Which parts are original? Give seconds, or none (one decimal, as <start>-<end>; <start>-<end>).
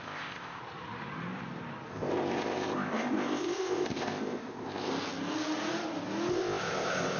0.6-1.9; 4.9-6.3